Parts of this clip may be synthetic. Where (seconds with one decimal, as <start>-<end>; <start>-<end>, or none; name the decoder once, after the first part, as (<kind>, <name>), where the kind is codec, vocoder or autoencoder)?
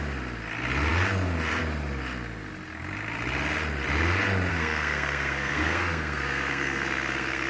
4.5-7.5 (codec, SNAC)